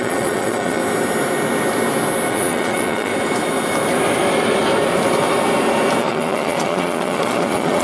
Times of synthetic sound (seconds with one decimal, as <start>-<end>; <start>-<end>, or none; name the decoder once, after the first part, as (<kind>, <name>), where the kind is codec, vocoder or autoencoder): 0.0-0.8 (vocoder, Vocos); 2.3-3.1; 6.0-7.8